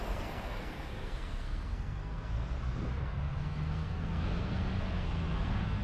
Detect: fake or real fake